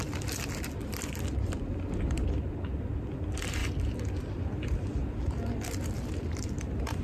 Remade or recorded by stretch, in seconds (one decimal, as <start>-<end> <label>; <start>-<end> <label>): 0.0-7.0 recorded